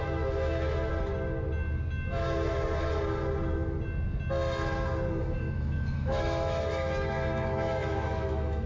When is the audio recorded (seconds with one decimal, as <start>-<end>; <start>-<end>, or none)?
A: 0.9-5.2